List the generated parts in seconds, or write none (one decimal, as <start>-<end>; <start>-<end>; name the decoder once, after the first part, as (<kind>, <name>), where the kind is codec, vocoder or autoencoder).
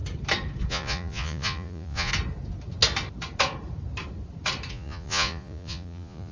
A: 0.7-2.1 (vocoder, Vocos); 4.7-6.3